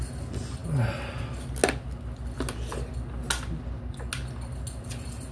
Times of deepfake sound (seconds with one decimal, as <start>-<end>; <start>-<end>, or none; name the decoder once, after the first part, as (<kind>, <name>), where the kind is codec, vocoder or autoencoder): none